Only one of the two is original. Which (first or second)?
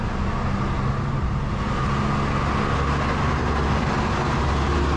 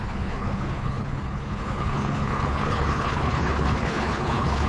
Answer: first